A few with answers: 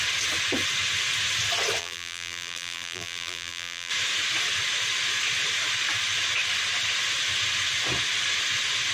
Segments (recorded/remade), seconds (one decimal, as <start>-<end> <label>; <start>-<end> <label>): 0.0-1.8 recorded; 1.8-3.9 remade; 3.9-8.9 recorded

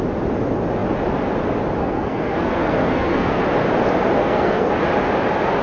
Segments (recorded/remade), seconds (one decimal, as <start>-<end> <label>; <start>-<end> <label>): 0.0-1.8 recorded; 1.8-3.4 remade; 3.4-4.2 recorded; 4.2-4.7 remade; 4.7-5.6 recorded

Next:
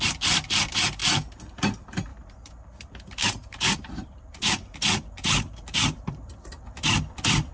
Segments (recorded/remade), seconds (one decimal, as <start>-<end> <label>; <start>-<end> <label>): 0.0-1.0 recorded; 1.0-1.7 remade; 1.7-2.1 recorded; 2.1-6.6 remade; 6.6-7.5 recorded

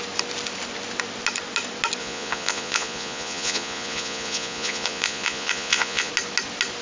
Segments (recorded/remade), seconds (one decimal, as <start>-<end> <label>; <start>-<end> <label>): 0.0-2.0 recorded; 2.0-6.1 remade; 6.1-6.8 recorded

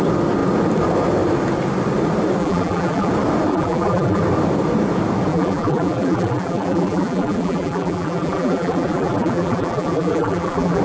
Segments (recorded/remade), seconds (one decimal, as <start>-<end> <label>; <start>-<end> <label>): 0.0-2.4 recorded; 2.4-3.1 remade; 3.1-3.5 recorded; 3.5-4.2 remade; 4.2-5.3 recorded; 5.3-10.8 remade

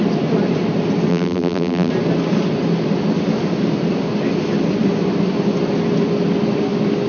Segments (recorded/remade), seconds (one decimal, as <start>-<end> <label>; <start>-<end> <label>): 0.0-1.1 recorded; 1.1-1.9 remade; 1.9-7.1 recorded

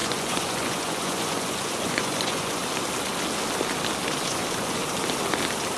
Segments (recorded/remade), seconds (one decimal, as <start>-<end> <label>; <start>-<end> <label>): 0.0-2.6 remade; 2.6-4.2 recorded; 4.2-4.8 remade; 4.8-5.8 recorded